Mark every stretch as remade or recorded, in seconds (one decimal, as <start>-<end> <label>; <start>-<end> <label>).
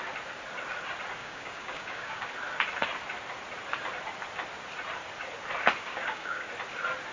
0.0-1.2 recorded; 1.2-2.3 remade; 2.3-5.8 recorded; 5.8-6.5 remade; 6.5-7.1 recorded